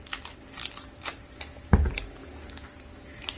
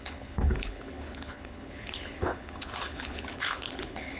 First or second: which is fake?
second